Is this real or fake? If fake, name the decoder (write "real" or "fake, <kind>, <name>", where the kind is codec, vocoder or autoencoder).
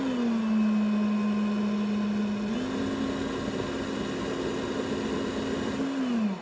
real